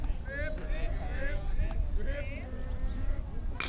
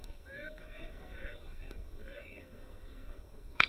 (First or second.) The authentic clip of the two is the first